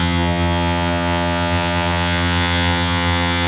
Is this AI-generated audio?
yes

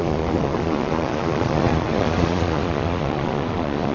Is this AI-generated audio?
yes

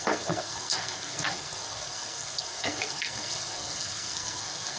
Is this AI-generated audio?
yes